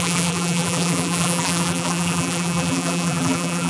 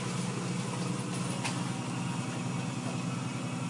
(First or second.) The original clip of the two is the second